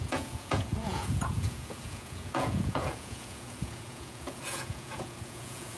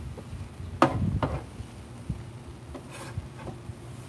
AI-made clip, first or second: first